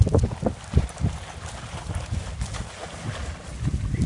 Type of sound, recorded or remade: recorded